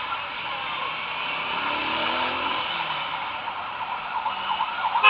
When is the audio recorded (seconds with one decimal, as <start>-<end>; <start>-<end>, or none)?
0.0-1.8; 2.6-5.1